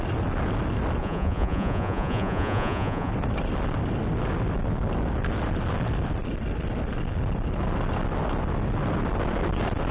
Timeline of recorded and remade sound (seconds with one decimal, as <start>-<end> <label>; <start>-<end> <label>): 0.0-1.0 recorded; 1.0-3.1 remade; 3.1-9.9 recorded